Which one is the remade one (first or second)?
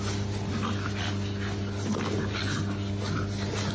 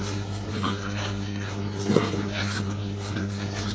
second